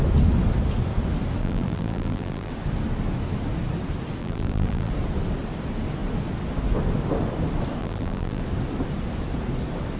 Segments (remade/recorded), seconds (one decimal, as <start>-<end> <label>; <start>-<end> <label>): 0.0-1.4 recorded; 1.4-2.5 remade; 2.5-4.2 recorded; 4.2-4.9 remade; 4.9-7.8 recorded; 7.8-8.4 remade; 8.4-10.0 recorded